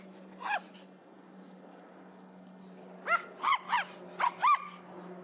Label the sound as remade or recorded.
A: recorded